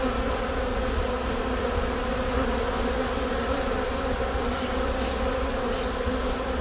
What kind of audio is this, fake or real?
real